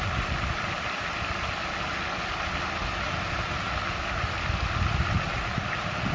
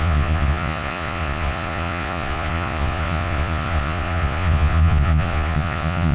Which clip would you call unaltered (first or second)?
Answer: first